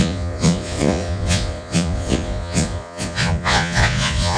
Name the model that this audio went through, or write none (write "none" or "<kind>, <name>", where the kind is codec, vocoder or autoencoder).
vocoder, Vocos